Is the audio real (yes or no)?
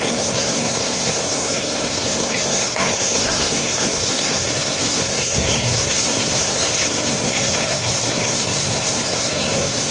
no